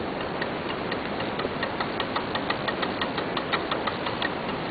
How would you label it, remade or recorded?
recorded